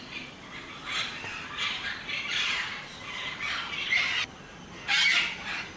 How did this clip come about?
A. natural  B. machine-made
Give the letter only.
A